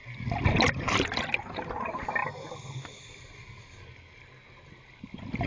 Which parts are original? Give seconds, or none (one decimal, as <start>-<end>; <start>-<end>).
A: 0.0-5.5